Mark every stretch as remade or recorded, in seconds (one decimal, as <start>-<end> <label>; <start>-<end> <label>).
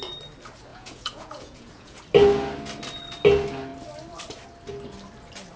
0.0-0.7 recorded; 0.7-2.0 remade; 2.0-5.6 recorded